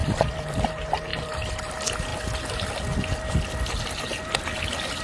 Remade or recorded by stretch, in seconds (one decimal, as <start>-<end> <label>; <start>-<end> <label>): 0.0-0.7 remade; 0.7-1.1 recorded; 1.1-1.7 remade; 1.7-2.1 recorded; 2.1-2.7 remade; 2.7-5.0 recorded